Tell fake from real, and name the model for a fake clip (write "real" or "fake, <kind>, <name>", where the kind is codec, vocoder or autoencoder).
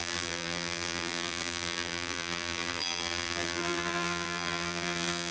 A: fake, vocoder, BigVGAN v2